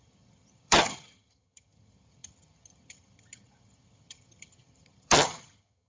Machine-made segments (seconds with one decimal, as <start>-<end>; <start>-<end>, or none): 0.0-5.9